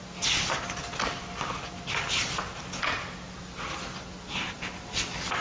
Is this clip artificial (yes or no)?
no